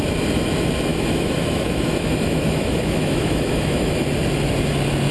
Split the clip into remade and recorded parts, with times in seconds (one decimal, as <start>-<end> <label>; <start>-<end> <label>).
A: 0.0-0.9 recorded; 0.9-4.0 remade; 4.0-5.1 recorded